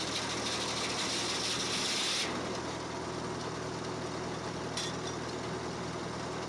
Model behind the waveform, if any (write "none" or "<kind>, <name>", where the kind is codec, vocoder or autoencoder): none